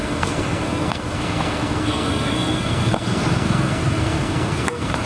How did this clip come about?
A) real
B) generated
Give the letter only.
B